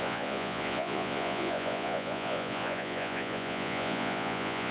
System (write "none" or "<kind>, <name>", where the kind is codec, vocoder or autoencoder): vocoder, Vocos